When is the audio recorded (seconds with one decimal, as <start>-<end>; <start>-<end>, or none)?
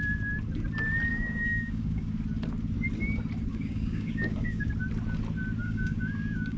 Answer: 0.0-1.1; 2.1-3.5; 4.7-5.6